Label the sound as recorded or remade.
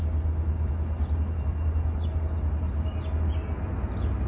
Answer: recorded